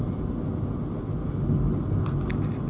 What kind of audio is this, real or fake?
real